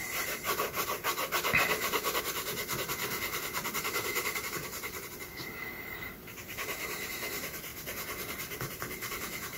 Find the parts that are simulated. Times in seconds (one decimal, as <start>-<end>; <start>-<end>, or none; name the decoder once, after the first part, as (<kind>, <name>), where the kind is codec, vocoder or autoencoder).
2.2-2.6 (vocoder, BigVGAN v2); 3.8-7.7; 8.7-9.6